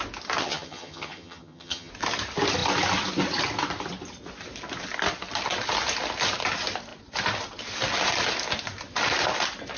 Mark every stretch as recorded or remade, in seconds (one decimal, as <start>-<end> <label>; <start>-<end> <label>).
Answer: 0.0-0.4 recorded; 0.4-1.9 remade; 1.9-9.8 recorded